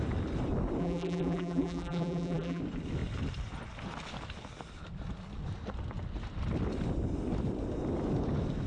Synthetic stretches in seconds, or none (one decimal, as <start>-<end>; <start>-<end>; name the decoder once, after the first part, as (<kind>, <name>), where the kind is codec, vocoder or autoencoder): 0.8-2.6 (vocoder, BigVGAN v2)